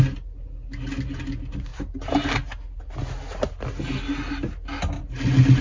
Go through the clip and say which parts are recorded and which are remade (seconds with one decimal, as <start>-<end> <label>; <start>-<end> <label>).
0.0-5.6 recorded